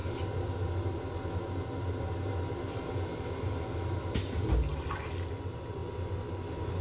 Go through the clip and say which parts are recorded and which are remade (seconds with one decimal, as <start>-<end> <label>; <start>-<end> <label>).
0.0-6.8 recorded